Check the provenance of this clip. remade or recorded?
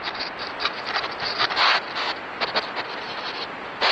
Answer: recorded